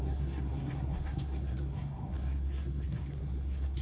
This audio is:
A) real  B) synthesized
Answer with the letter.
B